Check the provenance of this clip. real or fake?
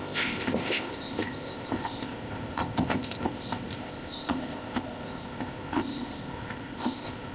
fake